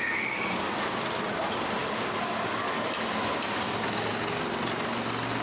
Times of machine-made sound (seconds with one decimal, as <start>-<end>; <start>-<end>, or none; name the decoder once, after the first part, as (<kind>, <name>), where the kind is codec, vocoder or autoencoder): none